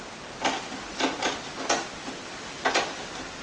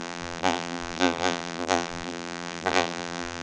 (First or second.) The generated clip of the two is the second